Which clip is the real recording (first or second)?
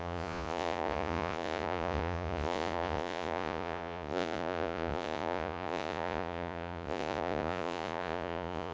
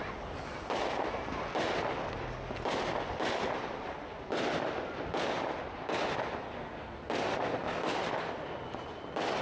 second